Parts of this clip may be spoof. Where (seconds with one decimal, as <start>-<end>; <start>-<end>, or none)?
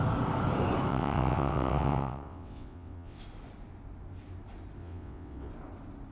0.9-3.2; 4.8-5.5